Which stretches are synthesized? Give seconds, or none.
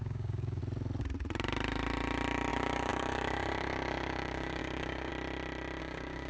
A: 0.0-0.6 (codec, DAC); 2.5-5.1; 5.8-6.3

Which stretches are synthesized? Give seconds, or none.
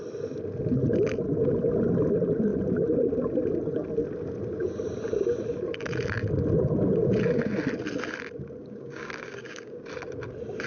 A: 8.6-9.9 (codec, DAC)